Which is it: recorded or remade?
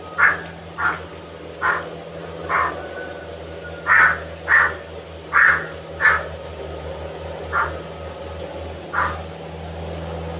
recorded